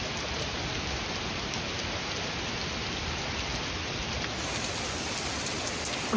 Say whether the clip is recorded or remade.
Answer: recorded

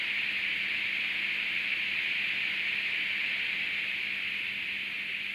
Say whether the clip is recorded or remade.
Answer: recorded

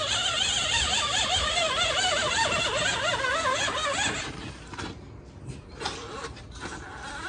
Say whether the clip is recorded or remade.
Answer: remade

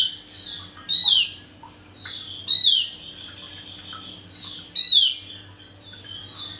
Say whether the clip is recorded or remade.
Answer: recorded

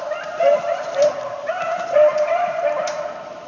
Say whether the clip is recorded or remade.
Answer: remade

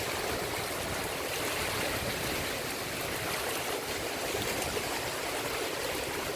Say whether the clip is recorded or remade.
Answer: recorded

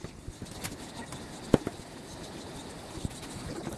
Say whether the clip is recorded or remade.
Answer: recorded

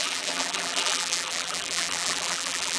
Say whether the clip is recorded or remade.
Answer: remade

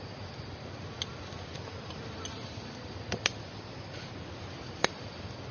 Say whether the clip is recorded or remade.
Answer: remade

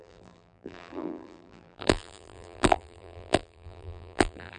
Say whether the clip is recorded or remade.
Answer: remade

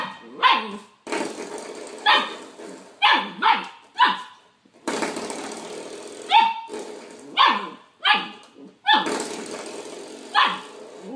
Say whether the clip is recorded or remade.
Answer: recorded